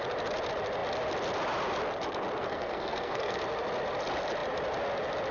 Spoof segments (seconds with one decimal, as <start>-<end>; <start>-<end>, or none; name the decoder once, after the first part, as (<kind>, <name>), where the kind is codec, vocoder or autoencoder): 2.4-3.4 (codec, SNAC)